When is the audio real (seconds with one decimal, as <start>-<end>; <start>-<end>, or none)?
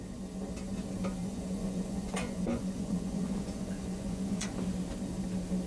0.0-1.2; 4.6-5.7